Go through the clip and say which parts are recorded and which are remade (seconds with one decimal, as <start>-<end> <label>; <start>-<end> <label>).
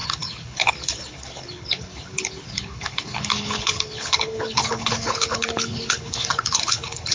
0.0-7.1 remade